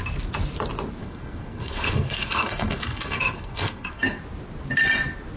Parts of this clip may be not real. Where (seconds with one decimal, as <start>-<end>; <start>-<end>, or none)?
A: 1.0-4.2